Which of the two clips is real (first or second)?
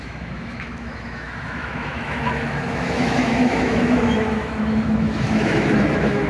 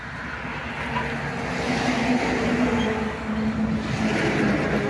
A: second